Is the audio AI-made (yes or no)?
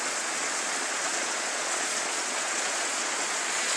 yes